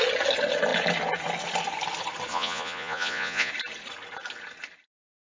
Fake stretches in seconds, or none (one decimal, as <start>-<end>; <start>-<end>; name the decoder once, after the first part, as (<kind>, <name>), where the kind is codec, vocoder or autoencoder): 2.3-3.5 (vocoder, Vocos)